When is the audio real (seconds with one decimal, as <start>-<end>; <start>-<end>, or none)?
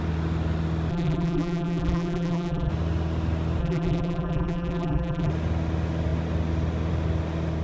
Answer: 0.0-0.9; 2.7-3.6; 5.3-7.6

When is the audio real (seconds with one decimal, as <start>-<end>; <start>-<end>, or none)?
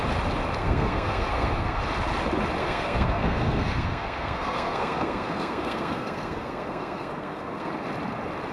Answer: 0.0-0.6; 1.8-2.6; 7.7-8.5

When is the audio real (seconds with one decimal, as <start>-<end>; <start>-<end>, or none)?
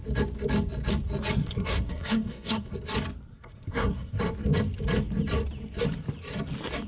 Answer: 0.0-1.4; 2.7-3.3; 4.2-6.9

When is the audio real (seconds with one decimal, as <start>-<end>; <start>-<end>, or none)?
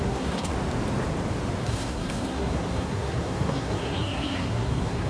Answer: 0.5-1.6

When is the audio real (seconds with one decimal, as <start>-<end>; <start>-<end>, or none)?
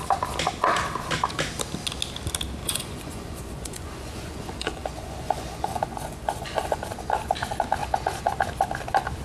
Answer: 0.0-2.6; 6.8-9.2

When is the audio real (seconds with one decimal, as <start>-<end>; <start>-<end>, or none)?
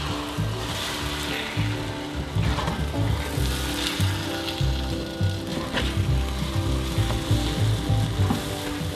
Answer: 0.0-9.0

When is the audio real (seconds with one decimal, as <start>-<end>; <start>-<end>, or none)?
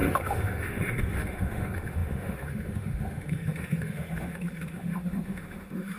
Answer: none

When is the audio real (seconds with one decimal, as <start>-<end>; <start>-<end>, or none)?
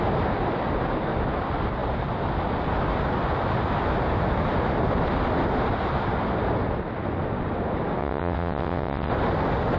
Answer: 0.0-8.0; 9.1-9.8